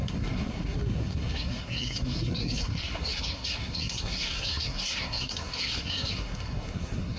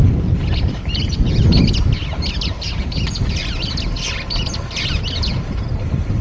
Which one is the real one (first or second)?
second